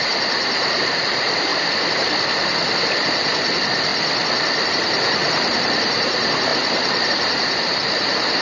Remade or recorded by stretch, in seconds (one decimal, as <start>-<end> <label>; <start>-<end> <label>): 0.0-1.5 remade; 1.5-2.8 recorded; 2.8-3.9 remade; 3.9-4.7 recorded; 4.7-6.5 remade; 6.5-7.1 recorded; 7.1-8.4 remade